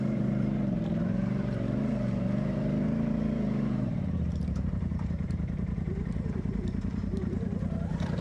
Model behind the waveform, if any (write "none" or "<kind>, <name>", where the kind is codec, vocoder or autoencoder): vocoder, BigVGAN v2